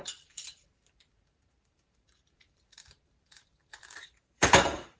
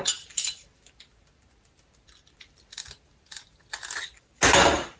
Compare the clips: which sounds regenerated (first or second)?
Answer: first